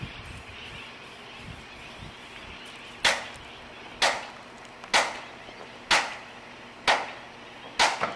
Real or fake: real